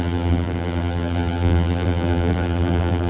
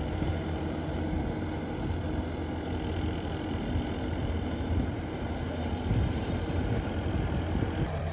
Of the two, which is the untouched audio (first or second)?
second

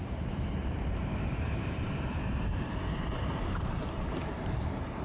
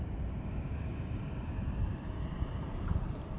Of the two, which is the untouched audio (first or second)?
second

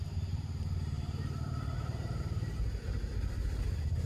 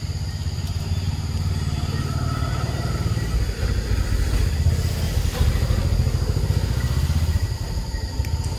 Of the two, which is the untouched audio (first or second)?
second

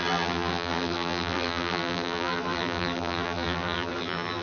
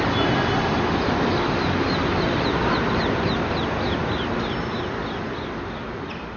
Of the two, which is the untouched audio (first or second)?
second